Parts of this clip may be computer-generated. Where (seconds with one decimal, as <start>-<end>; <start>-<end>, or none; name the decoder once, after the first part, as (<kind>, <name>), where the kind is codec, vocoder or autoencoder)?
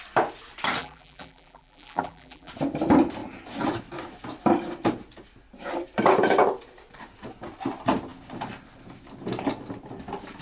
0.8-2.5 (vocoder, BigVGAN v2)